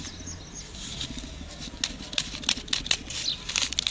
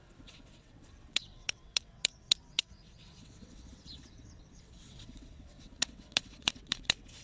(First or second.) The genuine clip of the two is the first